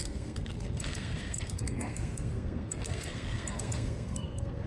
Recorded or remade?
remade